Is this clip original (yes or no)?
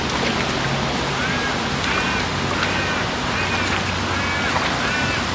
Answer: yes